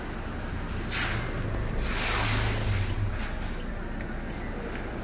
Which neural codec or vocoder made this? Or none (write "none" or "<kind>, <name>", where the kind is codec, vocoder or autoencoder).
none